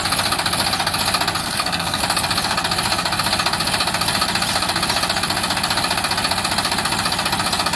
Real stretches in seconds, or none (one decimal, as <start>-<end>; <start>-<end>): 0.0-1.4; 2.0-7.8